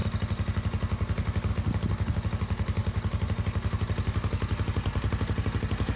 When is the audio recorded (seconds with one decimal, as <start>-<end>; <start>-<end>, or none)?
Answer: 0.0-6.0